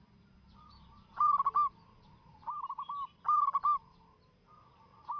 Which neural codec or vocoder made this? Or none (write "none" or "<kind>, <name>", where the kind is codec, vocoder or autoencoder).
none